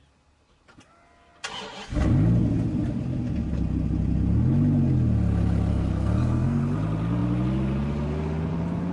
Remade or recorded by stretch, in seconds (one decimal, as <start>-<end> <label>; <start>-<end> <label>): 0.0-5.7 recorded; 5.7-6.6 remade; 6.6-8.9 recorded